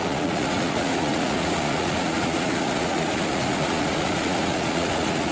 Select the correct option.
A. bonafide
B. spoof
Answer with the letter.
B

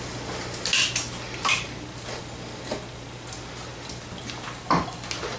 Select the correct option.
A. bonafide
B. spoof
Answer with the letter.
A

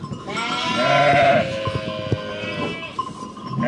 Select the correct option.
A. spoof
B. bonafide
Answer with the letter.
B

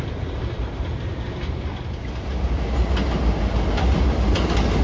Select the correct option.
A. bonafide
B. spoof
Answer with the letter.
A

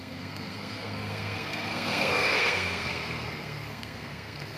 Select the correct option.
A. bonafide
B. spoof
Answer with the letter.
B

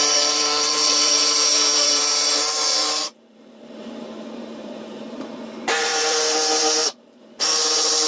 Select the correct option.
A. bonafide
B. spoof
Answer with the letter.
B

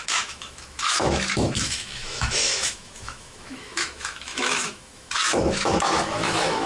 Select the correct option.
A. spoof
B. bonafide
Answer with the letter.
A